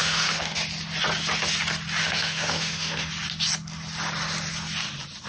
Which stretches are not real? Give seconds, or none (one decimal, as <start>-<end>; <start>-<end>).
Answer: 0.0-0.6; 2.0-3.1